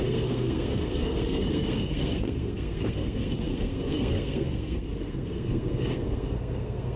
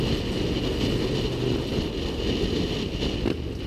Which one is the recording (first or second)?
second